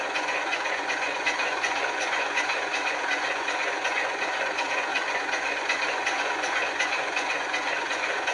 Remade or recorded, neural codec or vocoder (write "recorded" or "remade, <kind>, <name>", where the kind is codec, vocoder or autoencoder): remade, vocoder, Vocos